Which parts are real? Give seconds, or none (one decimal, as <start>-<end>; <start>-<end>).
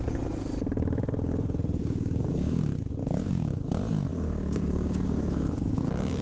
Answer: 0.0-1.8; 2.6-3.0; 3.6-4.1; 5.8-6.2